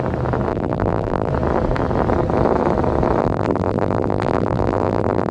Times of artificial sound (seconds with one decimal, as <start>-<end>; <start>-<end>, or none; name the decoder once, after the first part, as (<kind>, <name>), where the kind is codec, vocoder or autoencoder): 0.5-1.3 (vocoder, BigVGAN v2); 3.2-5.3